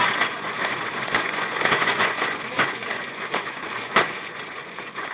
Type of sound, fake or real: fake